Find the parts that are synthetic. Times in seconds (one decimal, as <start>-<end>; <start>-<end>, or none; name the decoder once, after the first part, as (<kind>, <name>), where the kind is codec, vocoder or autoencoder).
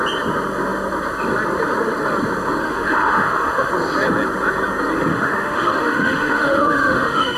2.6-3.7 (autoencoder, DAC-VAE); 5.1-7.4